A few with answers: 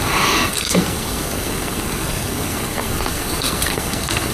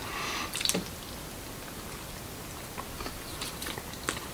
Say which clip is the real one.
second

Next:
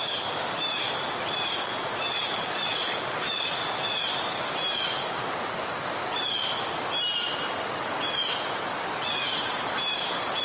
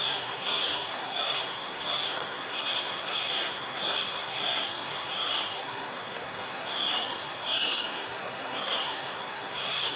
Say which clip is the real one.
first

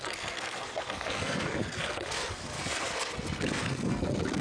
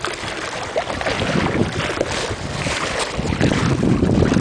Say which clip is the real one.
second